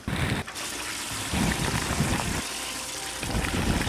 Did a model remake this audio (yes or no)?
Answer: yes